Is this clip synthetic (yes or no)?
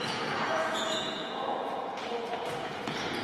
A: yes